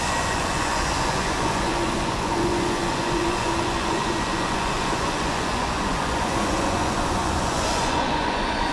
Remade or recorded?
remade